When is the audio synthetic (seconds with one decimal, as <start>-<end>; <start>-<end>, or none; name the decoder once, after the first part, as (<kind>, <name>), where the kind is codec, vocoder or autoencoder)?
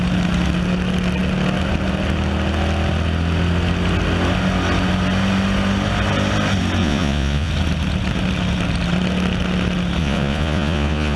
6.8-7.5 (vocoder, Vocos); 10.0-11.2